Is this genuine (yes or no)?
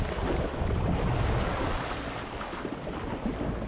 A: yes